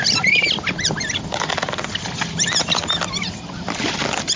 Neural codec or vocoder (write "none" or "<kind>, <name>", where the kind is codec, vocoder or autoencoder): none